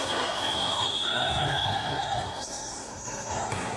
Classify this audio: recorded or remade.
remade